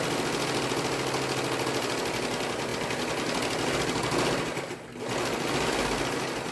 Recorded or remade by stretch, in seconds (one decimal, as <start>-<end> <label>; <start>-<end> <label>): 0.0-6.5 recorded